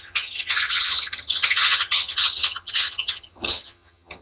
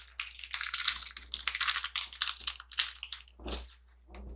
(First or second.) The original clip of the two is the second